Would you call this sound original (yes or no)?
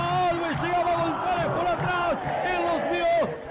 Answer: yes